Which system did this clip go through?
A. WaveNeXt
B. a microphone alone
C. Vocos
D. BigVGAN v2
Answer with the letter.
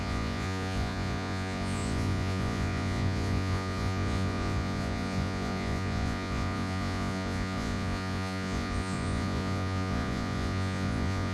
C